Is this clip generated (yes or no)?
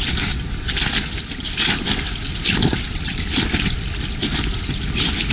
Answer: no